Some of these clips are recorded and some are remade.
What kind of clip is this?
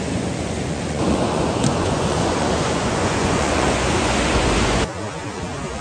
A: remade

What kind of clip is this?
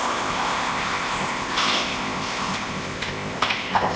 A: remade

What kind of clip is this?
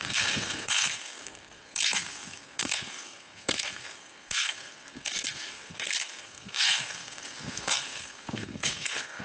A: remade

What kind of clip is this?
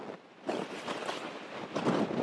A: recorded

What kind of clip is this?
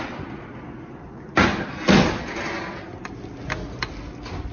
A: recorded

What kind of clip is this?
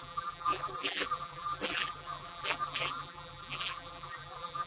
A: remade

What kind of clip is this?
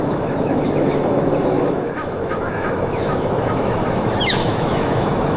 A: remade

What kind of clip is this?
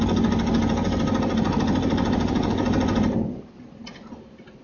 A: recorded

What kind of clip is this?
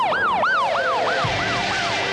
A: recorded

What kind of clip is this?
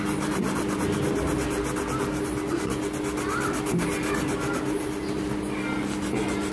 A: recorded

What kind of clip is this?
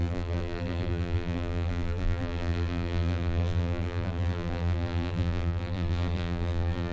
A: remade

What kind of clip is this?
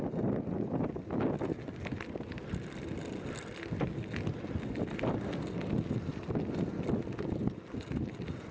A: recorded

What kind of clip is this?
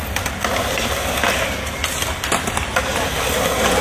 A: recorded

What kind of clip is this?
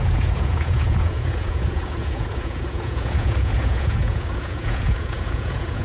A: remade